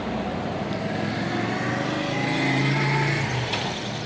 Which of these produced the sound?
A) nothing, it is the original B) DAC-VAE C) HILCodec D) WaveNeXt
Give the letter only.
A